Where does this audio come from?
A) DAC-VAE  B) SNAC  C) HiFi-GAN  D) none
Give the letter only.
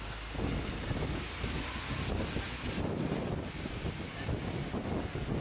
D